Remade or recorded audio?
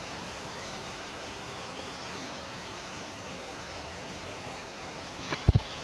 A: remade